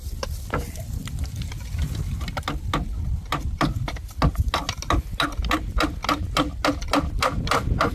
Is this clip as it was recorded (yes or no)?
yes